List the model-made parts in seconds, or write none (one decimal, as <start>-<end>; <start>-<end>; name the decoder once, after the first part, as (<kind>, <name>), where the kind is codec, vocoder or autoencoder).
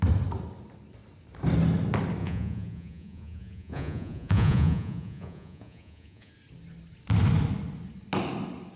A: 2.2-6.3 (vocoder, Vocos)